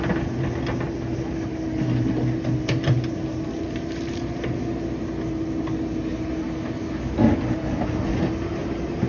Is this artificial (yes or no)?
no